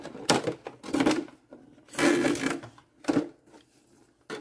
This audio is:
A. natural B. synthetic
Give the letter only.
A